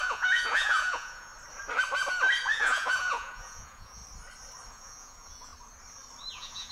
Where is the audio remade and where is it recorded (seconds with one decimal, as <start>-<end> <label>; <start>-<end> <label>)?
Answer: 0.0-1.3 remade; 1.3-2.4 recorded; 2.4-4.0 remade; 4.0-4.7 recorded; 4.7-5.5 remade; 5.5-6.3 recorded; 6.3-6.7 remade